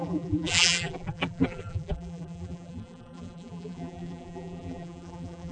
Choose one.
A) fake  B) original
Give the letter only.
A